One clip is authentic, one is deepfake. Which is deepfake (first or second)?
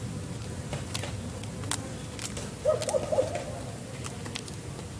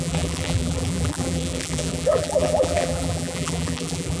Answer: second